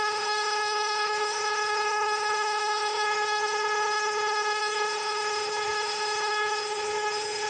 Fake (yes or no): yes